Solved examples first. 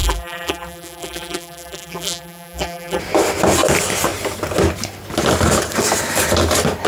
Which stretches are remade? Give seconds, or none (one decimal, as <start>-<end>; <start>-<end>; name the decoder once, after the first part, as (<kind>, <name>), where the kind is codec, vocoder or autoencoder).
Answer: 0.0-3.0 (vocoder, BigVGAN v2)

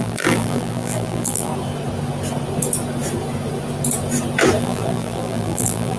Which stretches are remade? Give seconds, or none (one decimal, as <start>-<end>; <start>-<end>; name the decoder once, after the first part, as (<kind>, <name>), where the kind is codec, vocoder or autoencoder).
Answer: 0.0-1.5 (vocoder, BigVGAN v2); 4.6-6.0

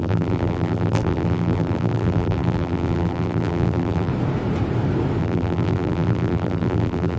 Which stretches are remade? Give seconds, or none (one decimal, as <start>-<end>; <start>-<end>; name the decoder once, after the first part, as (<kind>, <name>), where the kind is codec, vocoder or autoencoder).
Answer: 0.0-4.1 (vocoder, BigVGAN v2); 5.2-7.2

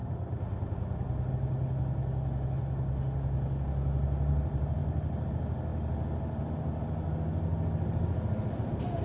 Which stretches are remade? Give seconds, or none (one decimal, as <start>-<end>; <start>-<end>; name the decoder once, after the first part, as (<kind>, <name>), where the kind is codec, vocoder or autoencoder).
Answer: none

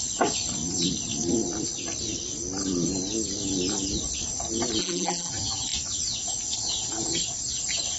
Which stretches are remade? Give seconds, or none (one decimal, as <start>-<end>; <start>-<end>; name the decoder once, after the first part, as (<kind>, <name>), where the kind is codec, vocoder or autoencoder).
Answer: 4.8-5.3 (vocoder, BigVGAN v2)